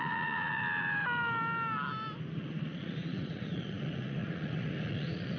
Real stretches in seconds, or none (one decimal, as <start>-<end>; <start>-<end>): 0.6-2.3

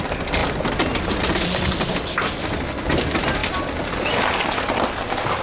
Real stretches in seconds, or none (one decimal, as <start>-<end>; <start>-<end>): 0.0-5.4